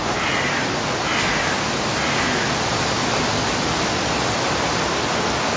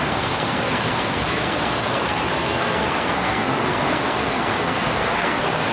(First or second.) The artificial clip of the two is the second